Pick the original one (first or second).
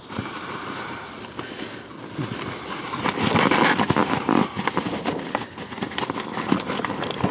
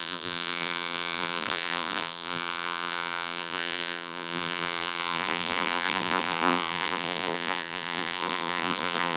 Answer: first